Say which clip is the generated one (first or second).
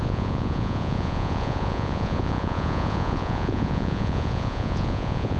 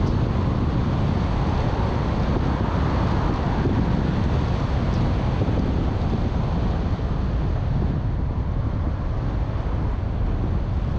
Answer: first